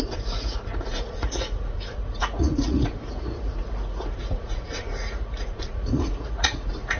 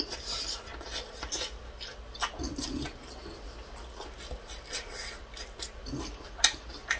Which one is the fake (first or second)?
first